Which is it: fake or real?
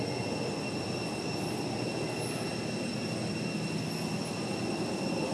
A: real